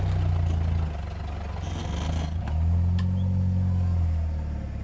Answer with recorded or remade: recorded